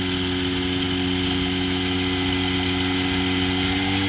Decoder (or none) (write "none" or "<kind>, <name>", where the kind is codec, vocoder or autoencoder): none